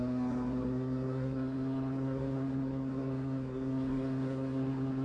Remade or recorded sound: remade